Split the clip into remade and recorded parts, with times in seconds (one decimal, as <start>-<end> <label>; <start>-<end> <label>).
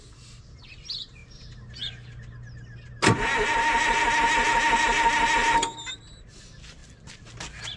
0.0-7.8 recorded